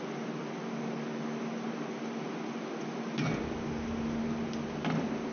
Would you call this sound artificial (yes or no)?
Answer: no